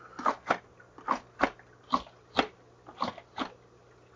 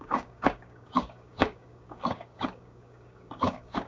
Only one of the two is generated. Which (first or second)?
second